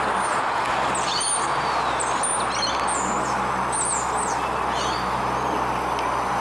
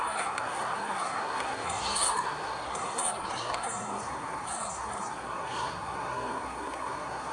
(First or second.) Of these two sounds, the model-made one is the second